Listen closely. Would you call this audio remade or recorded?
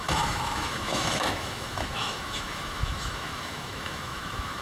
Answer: remade